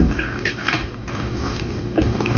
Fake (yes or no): yes